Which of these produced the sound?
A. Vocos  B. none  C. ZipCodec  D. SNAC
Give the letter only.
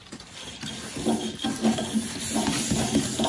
B